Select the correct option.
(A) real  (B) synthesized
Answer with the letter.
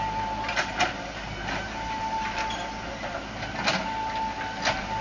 A